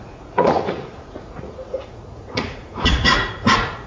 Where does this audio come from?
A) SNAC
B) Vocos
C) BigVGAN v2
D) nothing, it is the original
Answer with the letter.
B